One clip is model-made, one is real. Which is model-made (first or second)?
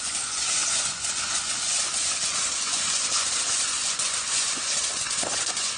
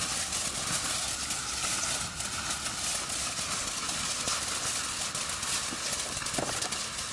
first